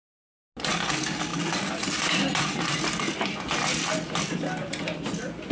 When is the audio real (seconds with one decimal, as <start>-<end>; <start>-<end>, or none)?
0.0-5.5